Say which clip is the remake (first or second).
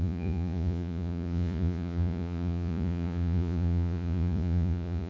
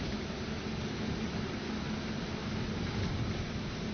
first